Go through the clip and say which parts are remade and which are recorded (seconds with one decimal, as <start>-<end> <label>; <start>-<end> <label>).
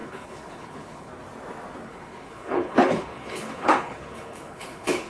0.0-1.1 remade; 1.1-1.9 recorded; 1.9-5.1 remade